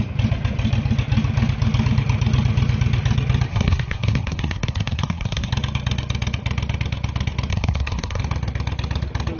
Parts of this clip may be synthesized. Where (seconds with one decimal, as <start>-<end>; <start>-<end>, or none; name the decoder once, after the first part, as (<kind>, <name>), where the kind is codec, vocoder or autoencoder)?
3.5-5.5 (codec, SNAC); 7.5-8.2